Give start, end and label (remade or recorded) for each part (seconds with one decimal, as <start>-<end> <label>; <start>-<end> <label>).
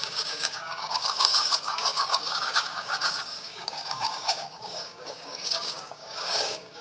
0.0-6.8 remade